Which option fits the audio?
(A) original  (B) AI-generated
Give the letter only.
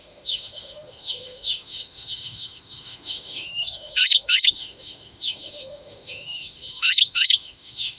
B